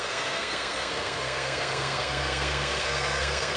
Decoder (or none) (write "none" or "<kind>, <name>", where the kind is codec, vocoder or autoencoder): codec, SNAC